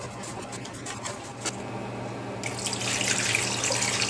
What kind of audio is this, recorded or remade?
recorded